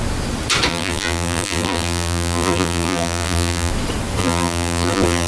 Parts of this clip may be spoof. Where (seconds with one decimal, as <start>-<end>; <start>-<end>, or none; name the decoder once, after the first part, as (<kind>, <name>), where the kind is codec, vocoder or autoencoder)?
0.7-3.7 (vocoder, BigVGAN v2); 4.2-5.3